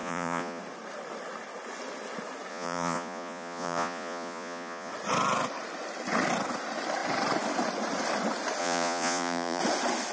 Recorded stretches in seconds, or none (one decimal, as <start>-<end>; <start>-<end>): 0.6-2.5; 4.9-8.6; 9.6-10.1

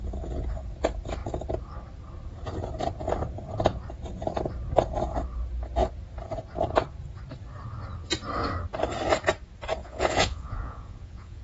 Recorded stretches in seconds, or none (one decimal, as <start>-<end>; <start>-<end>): 0.0-9.8

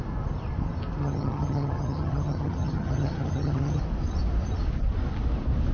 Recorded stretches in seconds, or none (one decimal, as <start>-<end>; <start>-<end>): 0.0-1.0; 3.8-5.7

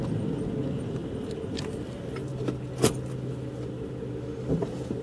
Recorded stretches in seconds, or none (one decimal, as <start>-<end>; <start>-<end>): 0.0-5.0

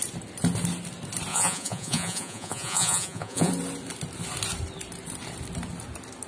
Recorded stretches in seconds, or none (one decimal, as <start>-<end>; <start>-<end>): 0.0-1.3; 3.5-6.3